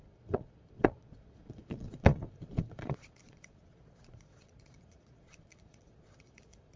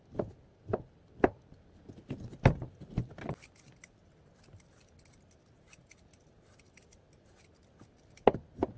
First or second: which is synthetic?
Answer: first